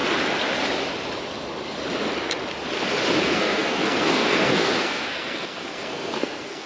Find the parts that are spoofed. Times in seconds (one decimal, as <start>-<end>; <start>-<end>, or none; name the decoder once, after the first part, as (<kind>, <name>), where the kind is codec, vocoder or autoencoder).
3.2-6.7 (codec, SNAC)